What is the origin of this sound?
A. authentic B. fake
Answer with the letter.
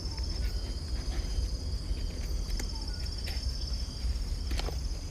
A